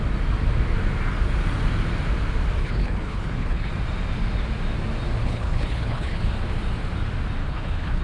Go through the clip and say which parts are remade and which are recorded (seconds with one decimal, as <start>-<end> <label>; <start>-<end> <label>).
0.0-2.6 recorded; 2.6-3.7 remade; 3.7-5.2 recorded; 5.2-6.2 remade; 6.2-7.4 recorded; 7.4-8.0 remade